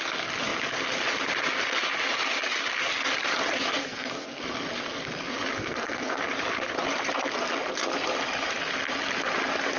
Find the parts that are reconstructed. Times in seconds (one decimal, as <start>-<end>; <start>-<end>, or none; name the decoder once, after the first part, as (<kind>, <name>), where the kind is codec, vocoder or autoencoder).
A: 3.8-4.4 (codec, SNAC); 5.6-6.2

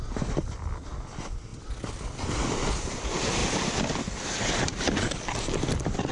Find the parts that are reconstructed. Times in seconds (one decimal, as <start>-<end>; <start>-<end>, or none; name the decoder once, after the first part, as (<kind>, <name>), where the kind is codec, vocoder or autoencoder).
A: none

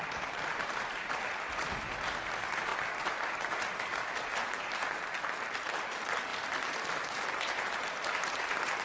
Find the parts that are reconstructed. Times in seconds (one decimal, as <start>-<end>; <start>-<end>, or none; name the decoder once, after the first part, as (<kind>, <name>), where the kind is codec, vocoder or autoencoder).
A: 0.0-8.8 (vocoder, BigVGAN v2)

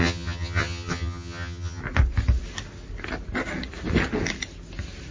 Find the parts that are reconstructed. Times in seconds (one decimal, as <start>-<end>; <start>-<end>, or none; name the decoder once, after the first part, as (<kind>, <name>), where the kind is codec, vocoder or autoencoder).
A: 0.0-1.8 (vocoder, HiFi-GAN)

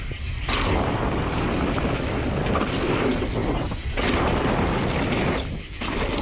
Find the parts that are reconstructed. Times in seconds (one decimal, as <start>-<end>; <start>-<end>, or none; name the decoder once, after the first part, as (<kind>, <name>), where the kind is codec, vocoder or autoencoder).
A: none

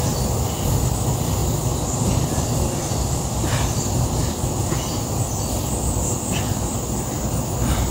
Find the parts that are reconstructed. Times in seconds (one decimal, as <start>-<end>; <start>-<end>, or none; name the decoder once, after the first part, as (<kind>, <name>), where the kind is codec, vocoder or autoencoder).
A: 1.4-4.1 (vocoder, BigVGAN v2)